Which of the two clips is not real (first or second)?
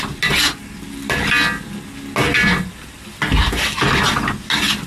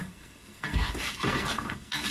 second